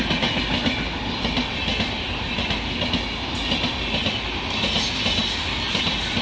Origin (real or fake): real